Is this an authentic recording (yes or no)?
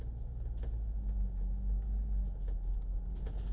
yes